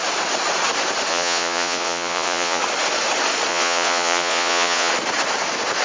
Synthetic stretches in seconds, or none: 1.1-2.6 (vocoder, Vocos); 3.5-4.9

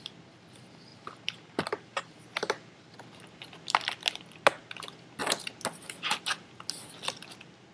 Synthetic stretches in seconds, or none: 0.9-2.9 (vocoder, BigVGAN v2)